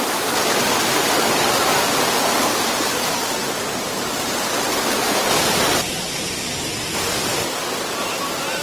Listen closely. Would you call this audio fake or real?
real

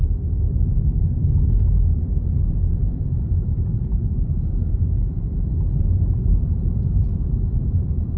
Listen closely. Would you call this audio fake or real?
fake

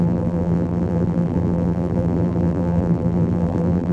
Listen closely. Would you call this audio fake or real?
fake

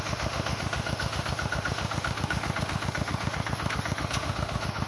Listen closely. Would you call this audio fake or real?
fake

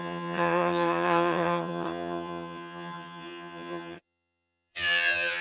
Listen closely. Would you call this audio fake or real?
fake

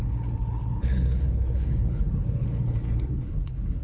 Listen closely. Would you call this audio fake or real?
fake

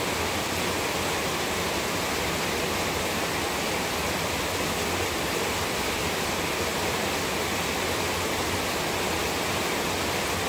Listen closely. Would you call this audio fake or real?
real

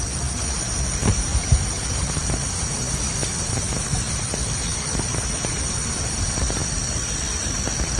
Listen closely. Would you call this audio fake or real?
real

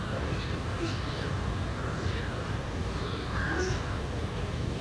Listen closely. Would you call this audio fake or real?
fake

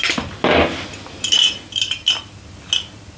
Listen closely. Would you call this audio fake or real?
real